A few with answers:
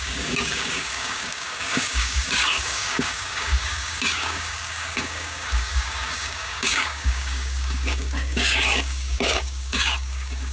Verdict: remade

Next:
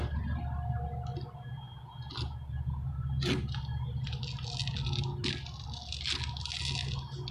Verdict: recorded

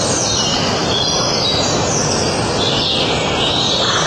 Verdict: recorded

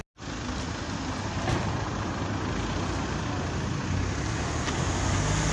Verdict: recorded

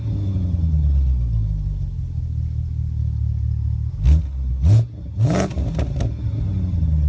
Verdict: recorded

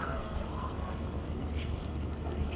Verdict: remade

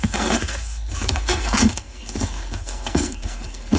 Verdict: remade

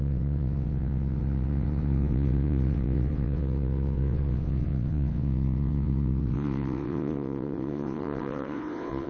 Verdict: remade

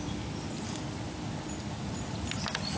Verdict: recorded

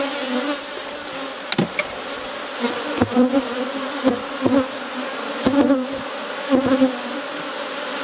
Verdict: recorded